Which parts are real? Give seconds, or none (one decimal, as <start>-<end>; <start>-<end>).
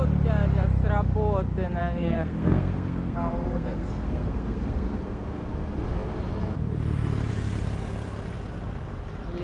0.0-1.8; 5.3-9.4